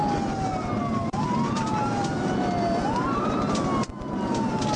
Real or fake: real